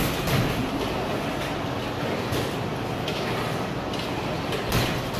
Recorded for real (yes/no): yes